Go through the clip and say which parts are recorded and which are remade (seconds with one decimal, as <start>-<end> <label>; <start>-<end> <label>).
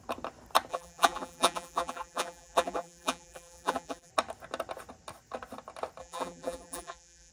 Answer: 0.0-0.7 recorded; 0.7-4.1 remade; 4.1-6.0 recorded; 6.0-7.3 remade